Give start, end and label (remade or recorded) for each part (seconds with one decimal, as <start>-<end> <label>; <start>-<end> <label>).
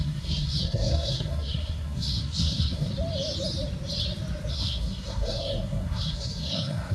0.0-2.9 remade; 2.9-4.5 recorded; 4.5-6.9 remade